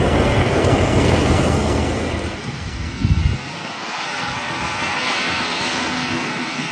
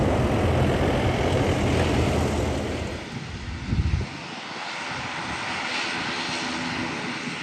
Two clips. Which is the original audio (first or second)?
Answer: second